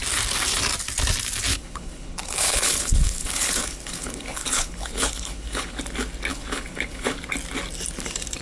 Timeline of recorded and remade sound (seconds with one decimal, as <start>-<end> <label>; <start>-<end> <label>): 0.0-1.5 recorded; 1.5-5.8 remade; 5.8-6.3 recorded; 6.3-7.2 remade; 7.2-8.4 recorded